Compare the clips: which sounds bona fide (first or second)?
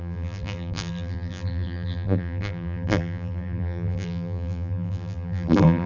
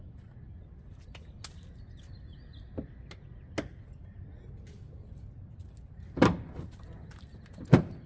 second